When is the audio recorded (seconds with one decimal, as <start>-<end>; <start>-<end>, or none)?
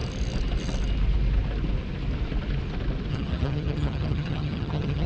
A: 0.0-3.1